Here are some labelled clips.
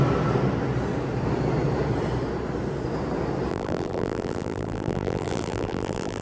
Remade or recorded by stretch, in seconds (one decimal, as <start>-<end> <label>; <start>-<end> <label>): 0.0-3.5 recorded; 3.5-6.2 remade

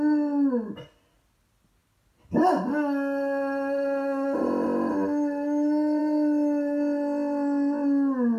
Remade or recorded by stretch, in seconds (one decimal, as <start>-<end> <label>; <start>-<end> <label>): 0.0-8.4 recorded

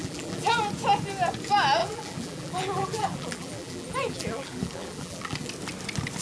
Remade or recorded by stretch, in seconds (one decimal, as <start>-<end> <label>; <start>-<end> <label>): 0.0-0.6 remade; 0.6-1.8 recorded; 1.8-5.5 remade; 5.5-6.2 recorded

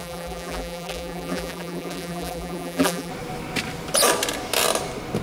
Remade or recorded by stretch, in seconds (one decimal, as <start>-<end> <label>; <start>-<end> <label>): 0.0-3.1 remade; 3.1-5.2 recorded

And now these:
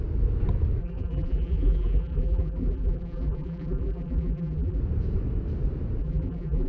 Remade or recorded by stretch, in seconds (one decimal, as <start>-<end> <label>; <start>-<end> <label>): 0.0-0.8 recorded; 0.8-4.8 remade; 4.8-6.0 recorded; 6.0-6.7 remade

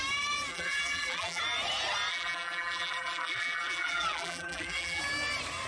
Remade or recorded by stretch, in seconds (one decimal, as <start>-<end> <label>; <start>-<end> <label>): 0.0-0.5 recorded; 0.5-1.4 remade; 1.4-2.1 recorded; 2.1-5.0 remade; 5.0-5.7 recorded

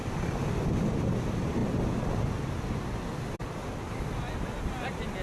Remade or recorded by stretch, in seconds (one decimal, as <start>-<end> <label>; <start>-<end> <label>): 0.0-5.2 recorded